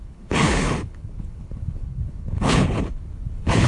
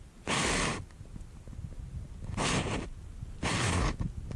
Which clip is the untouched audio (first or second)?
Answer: second